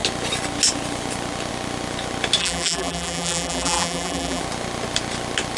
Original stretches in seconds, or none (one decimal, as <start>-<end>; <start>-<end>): 0.0-2.4; 4.4-5.6